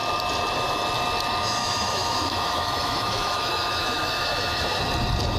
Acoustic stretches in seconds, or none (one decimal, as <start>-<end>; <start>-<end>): 0.0-1.6; 4.8-5.4